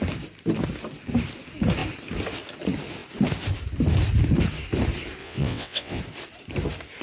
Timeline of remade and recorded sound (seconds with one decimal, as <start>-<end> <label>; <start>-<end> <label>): 0.0-5.2 recorded; 5.2-6.0 remade; 6.0-7.0 recorded

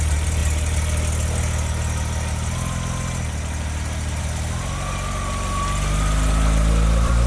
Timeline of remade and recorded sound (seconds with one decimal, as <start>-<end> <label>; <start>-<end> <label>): 0.0-0.4 remade; 0.4-4.2 recorded; 4.2-7.3 remade

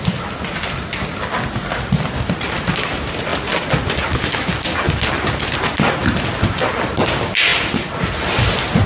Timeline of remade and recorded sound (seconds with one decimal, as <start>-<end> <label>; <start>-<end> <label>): 0.0-8.9 recorded

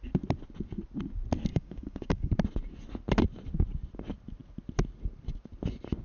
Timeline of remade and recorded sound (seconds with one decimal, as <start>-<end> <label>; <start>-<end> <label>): 0.0-1.5 recorded; 1.5-2.3 remade; 2.3-6.0 recorded

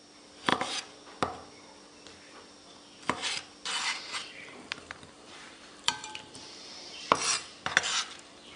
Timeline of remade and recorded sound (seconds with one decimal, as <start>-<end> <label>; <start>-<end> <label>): 0.0-4.2 recorded; 4.2-6.7 remade; 6.7-8.6 recorded

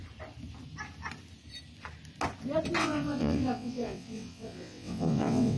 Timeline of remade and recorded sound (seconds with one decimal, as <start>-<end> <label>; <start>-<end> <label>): 0.0-2.8 recorded; 2.8-5.6 remade